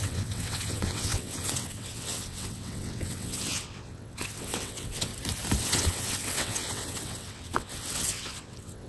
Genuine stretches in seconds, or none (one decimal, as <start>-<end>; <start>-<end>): 5.1-5.6